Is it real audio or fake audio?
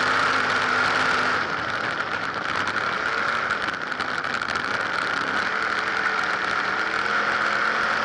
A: real